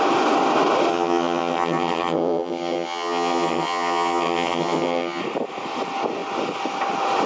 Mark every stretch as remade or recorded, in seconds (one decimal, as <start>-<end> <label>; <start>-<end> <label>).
0.0-0.9 recorded; 0.9-5.2 remade; 5.2-7.3 recorded